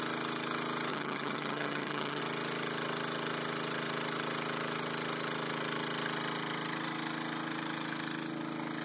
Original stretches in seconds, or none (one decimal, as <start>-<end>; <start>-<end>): 0.0-0.9; 2.2-8.8